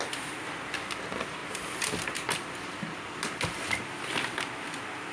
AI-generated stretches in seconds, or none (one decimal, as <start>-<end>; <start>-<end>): none